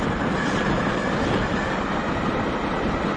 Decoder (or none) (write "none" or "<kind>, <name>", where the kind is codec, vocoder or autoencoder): none